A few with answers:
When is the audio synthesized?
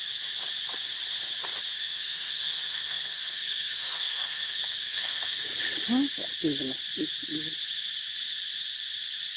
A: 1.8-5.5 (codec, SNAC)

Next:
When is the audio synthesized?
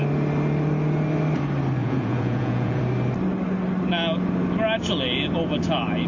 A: 1.8-2.8 (vocoder, Vocos)